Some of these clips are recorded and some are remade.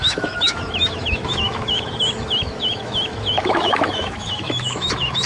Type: remade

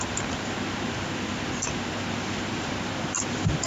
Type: recorded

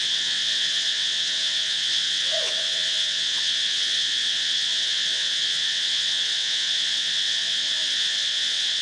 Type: remade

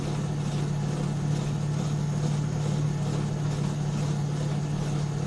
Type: recorded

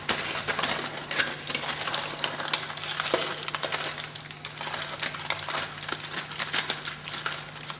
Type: recorded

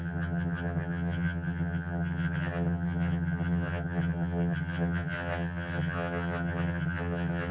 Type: remade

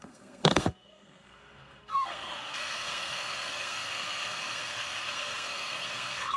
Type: remade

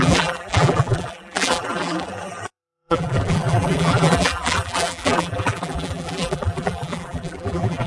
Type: remade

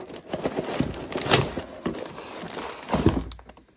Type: recorded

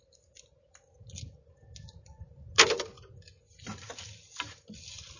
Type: recorded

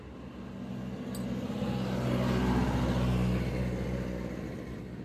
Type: recorded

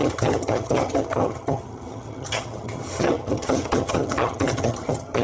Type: remade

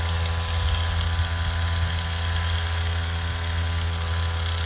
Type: recorded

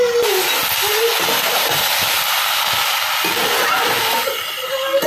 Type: recorded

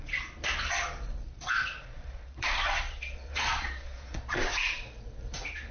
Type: remade